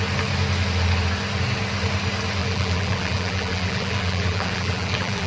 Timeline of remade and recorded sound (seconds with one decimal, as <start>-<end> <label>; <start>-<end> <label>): 0.0-2.4 recorded; 2.4-5.3 remade